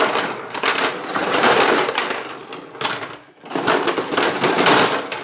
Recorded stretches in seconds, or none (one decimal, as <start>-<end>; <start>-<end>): 0.0-1.2; 2.1-5.2